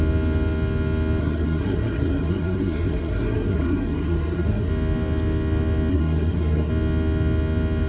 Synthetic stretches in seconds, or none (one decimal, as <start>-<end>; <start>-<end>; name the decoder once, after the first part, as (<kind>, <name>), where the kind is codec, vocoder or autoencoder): 1.2-4.7 (codec, SNAC); 5.9-6.7